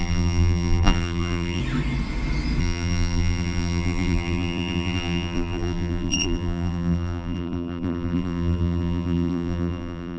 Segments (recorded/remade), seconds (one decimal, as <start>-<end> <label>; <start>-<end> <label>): 0.0-1.6 remade; 1.6-2.6 recorded; 2.6-10.2 remade